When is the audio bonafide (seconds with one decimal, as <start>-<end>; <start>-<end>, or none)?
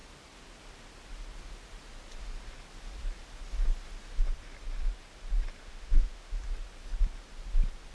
0.0-5.6; 6.4-7.9